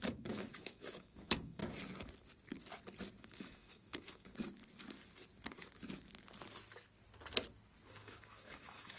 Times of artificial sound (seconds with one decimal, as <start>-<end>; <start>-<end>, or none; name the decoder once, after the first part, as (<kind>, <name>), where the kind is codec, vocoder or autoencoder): 0.0-1.6 (autoencoder, DAC-VAE); 3.2-4.3; 7.9-9.0